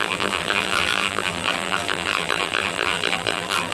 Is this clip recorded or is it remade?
remade